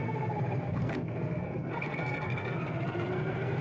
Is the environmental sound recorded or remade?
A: remade